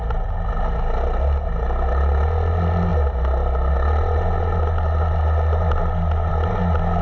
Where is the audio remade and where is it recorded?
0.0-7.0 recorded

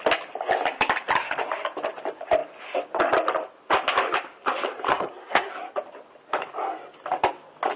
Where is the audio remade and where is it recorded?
0.0-4.9 recorded; 4.9-5.5 remade; 5.5-7.8 recorded

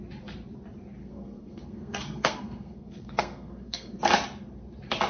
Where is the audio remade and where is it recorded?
0.0-1.0 recorded; 1.0-4.1 remade; 4.1-5.1 recorded

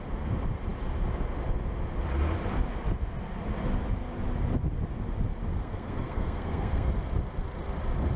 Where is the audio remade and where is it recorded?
0.0-5.5 recorded; 5.5-6.9 remade; 6.9-8.2 recorded

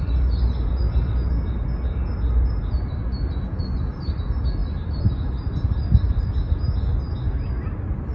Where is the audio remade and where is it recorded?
0.0-8.1 recorded